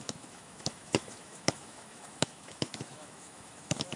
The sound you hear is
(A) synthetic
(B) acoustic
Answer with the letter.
A